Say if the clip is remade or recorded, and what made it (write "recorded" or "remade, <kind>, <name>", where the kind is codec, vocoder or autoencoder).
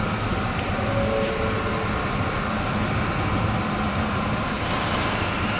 recorded